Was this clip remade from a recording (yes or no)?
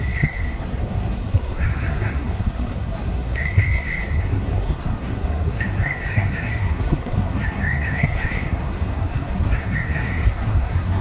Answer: yes